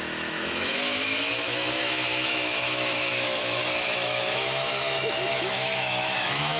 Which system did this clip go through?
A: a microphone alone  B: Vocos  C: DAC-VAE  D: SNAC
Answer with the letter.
C